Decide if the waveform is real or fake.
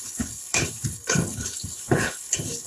fake